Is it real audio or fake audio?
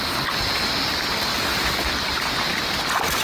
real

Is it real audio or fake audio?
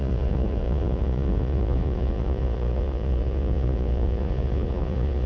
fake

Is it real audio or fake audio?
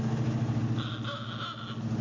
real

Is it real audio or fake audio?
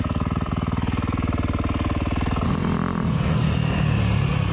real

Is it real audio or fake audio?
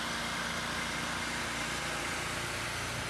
real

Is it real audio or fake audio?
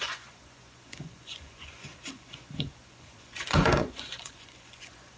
fake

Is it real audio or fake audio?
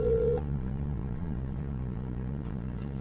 fake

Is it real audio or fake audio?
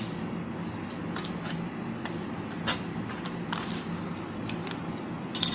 real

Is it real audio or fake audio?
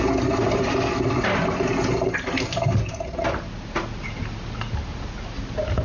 real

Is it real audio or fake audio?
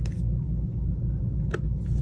real